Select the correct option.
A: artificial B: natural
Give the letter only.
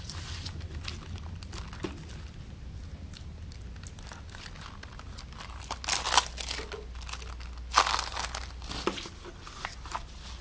B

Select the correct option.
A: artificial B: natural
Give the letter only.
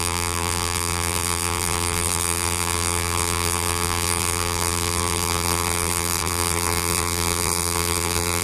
A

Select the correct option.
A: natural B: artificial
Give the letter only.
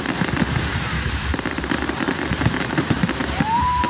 B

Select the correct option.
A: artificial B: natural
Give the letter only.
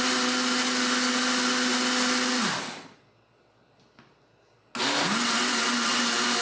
B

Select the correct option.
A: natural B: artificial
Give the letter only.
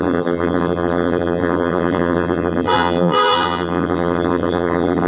B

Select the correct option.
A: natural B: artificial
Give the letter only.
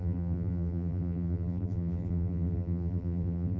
B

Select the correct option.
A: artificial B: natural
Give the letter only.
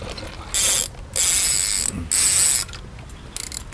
B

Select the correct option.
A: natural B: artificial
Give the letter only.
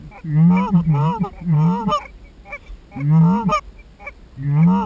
A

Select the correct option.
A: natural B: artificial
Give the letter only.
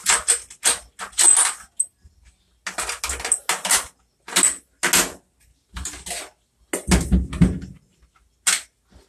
A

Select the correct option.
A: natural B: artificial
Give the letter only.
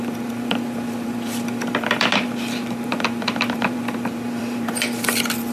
B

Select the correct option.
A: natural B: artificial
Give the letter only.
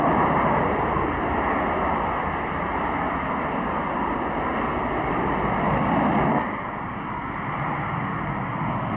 A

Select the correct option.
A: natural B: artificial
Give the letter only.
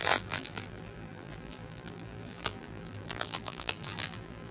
B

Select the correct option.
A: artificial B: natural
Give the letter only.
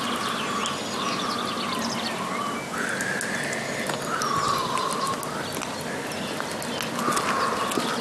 B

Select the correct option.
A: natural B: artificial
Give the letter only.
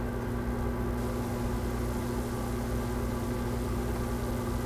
A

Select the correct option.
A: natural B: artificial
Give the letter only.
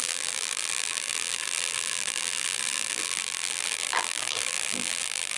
B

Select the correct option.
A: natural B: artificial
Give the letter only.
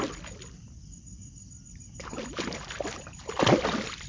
B